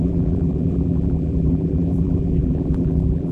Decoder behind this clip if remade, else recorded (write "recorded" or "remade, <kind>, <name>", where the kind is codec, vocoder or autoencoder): remade, vocoder, BigVGAN v2